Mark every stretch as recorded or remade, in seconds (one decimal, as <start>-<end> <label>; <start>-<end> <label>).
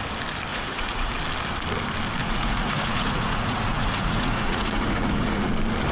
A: 0.0-0.5 recorded; 0.5-1.1 remade; 1.1-2.2 recorded; 2.2-5.5 remade; 5.5-5.9 recorded